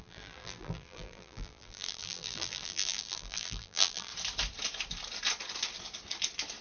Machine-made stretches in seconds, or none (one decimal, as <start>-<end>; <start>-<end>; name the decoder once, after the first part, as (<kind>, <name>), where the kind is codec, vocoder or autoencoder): 0.0-4.1 (vocoder, BigVGAN v2)